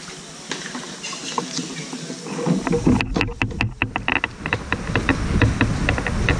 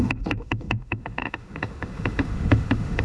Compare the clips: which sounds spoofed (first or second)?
second